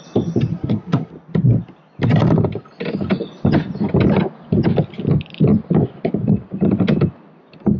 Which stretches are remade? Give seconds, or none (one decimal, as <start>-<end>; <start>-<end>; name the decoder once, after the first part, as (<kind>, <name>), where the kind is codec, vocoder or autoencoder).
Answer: 0.5-1.1 (codec, SNAC)